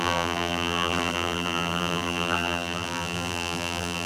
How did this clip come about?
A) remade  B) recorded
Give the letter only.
A